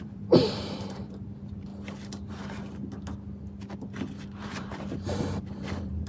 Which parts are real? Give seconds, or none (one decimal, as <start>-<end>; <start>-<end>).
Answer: 1.7-2.3; 2.8-4.4